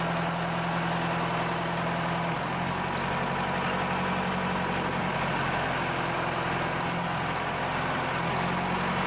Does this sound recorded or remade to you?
recorded